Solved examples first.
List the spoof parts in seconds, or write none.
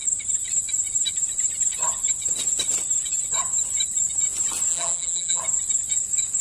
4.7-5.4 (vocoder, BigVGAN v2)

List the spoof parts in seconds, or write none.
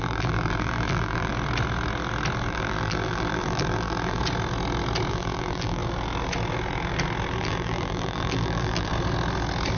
0.0-1.3 (vocoder, BigVGAN v2); 2.5-4.2; 5.1-5.8; 7.4-8.9